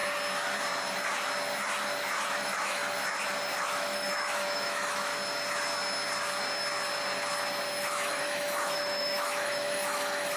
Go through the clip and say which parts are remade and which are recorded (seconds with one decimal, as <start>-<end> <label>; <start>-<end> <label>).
0.0-2.3 recorded; 2.3-2.8 remade; 2.8-3.6 recorded; 3.6-5.1 remade; 5.1-7.8 recorded; 7.8-10.4 remade